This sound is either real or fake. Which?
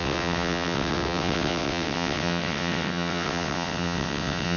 fake